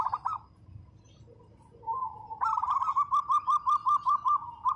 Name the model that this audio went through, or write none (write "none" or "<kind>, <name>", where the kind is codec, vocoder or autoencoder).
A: none